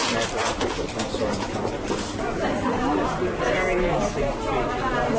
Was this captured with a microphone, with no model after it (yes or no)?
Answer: yes